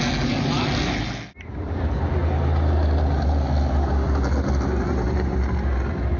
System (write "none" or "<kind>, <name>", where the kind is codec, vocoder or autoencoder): none